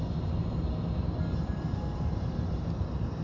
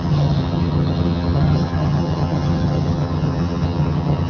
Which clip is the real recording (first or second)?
first